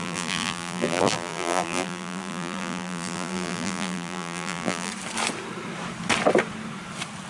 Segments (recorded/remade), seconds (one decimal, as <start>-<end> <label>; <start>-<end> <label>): 0.0-4.9 remade; 4.9-7.3 recorded